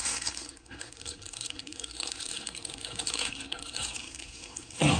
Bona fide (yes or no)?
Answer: no